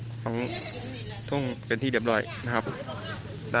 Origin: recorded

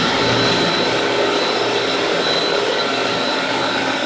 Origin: remade